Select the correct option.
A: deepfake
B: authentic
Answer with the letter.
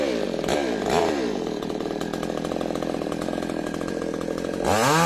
B